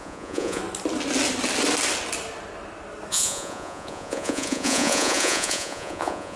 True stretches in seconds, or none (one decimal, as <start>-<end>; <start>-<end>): 0.6-3.1